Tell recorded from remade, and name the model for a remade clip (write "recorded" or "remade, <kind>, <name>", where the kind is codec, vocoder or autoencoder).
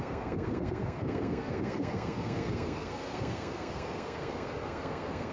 remade, codec, SNAC